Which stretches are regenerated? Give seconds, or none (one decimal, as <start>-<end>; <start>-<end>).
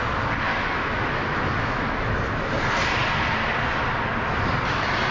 0.5-2.6